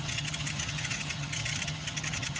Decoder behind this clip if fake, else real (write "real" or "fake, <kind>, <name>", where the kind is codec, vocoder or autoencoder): fake, vocoder, HiFi-GAN